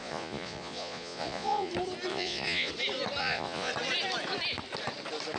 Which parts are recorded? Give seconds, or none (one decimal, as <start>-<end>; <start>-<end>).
1.7-2.1; 2.7-3.2; 3.7-5.4